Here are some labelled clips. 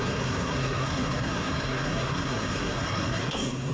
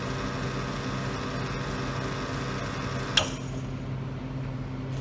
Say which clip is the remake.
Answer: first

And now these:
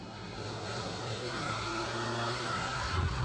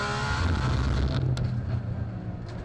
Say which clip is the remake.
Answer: first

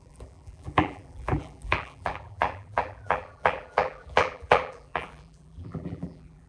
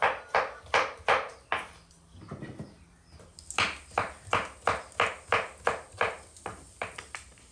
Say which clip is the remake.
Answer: first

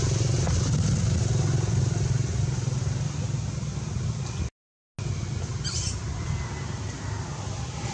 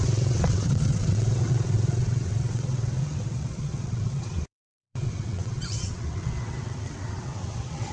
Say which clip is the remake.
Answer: second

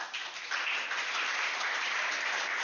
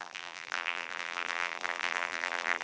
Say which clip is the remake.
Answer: second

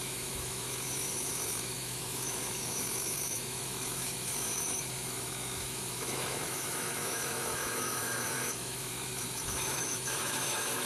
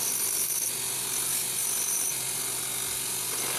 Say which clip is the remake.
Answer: first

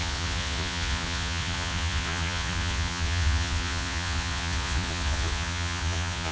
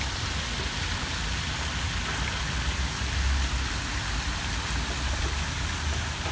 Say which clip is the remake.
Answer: first